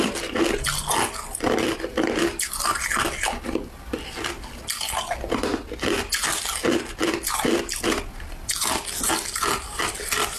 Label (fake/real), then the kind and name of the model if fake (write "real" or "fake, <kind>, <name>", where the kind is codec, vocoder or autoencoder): real